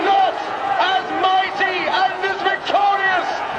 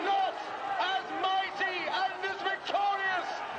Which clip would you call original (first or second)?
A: second